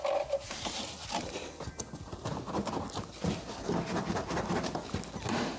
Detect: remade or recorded recorded